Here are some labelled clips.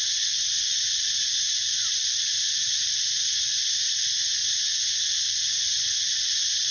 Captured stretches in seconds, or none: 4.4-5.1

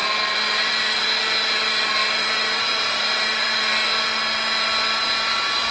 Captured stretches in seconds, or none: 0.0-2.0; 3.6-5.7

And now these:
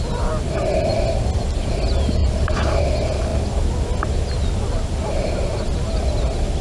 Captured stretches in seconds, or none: 0.0-2.2; 2.8-6.6

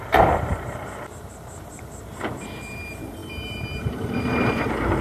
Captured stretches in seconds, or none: none

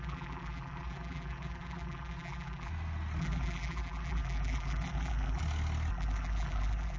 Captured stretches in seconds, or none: 2.7-3.2; 5.4-5.9

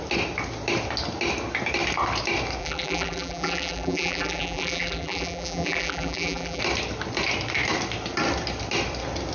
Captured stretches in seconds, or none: 0.0-2.6; 6.6-9.3